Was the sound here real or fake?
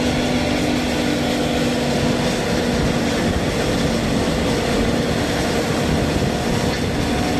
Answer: real